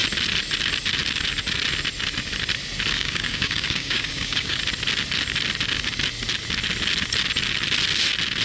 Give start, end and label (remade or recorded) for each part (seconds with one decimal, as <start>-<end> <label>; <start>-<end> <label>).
0.0-2.9 recorded; 2.9-4.6 remade; 4.6-8.4 recorded